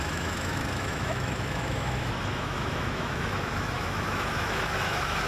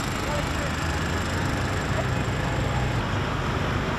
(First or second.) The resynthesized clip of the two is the first